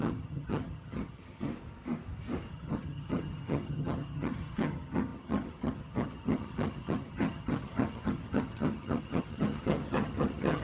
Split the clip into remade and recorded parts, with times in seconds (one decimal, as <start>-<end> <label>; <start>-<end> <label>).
0.0-1.5 remade; 1.5-2.5 recorded; 2.5-10.6 remade